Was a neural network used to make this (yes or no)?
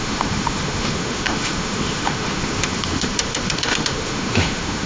yes